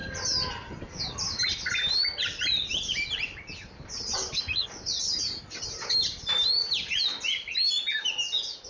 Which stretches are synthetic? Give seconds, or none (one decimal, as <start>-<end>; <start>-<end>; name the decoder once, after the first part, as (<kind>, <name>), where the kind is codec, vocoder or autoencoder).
none